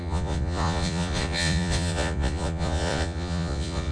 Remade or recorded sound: remade